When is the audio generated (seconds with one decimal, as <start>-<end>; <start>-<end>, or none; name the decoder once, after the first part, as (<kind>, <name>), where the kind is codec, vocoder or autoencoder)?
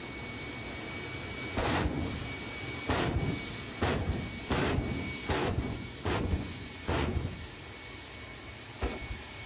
1.6-2.1 (vocoder, Vocos); 5.4-7.3